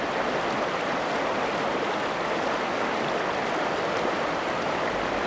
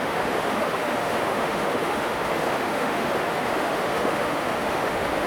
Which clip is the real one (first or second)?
first